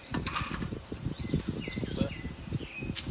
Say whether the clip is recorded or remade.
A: recorded